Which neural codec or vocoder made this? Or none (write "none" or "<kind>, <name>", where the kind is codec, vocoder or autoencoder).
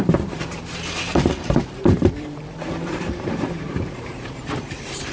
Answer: vocoder, BigVGAN v2